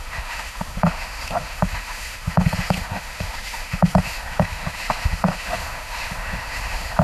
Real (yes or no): no